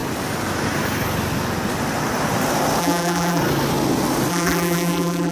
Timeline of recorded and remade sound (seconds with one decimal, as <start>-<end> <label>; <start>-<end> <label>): 0.0-2.8 recorded; 2.8-3.4 remade; 3.4-4.3 recorded; 4.3-5.3 remade